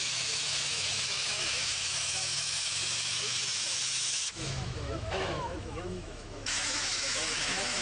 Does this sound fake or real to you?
fake